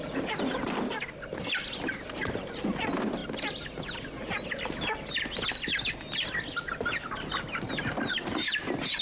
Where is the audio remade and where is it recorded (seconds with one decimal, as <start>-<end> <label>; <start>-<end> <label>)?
0.0-9.0 recorded